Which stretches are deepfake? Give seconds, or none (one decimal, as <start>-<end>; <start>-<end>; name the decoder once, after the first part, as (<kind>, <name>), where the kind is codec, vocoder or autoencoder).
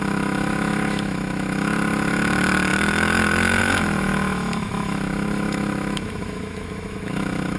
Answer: 0.0-7.6 (autoencoder, DAC-VAE)